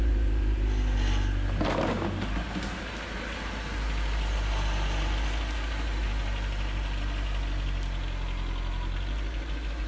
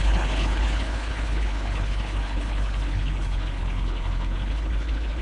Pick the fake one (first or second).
second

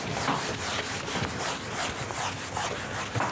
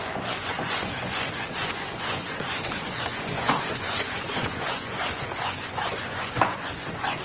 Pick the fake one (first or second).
second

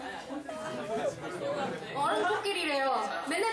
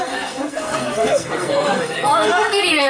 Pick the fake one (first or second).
second